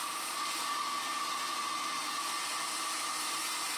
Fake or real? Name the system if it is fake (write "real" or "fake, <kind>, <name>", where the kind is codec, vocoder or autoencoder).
real